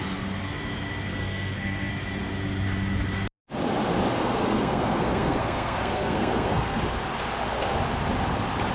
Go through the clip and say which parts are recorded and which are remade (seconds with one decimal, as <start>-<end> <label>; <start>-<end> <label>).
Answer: 0.0-1.1 recorded; 1.1-1.9 remade; 1.9-4.2 recorded; 4.2-6.8 remade; 6.8-8.7 recorded

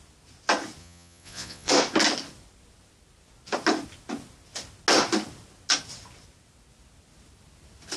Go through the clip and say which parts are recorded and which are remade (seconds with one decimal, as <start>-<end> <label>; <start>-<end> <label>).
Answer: 0.0-0.8 recorded; 0.8-1.7 remade; 1.7-8.0 recorded

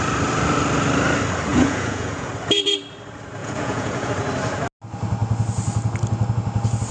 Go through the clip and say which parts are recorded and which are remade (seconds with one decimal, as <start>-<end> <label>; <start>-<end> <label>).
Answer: 0.0-1.5 recorded; 1.5-2.3 remade; 2.3-3.4 recorded; 3.4-4.1 remade; 4.1-6.9 recorded

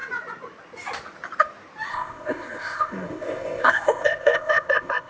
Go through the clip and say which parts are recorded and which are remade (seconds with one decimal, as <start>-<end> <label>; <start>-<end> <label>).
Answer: 0.0-1.9 recorded; 1.9-5.1 remade

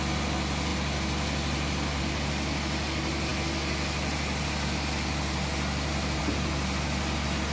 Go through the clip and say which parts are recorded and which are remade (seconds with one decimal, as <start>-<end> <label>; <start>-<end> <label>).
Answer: 0.0-7.5 recorded

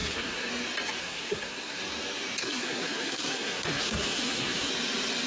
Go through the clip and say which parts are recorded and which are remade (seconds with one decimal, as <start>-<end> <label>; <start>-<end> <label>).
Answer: 0.0-0.5 remade; 0.5-1.0 recorded; 1.0-1.8 remade; 1.8-2.4 recorded; 2.4-4.7 remade; 4.7-5.3 recorded